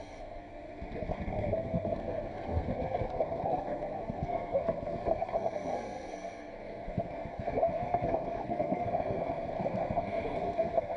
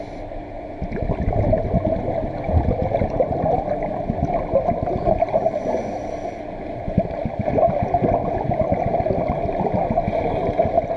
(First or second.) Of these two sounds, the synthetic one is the first